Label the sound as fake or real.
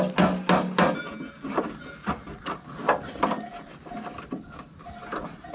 real